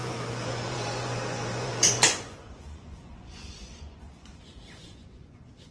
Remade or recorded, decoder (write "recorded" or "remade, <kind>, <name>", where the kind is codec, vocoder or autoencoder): remade, vocoder, Vocos